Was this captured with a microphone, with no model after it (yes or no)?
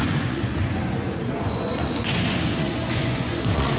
no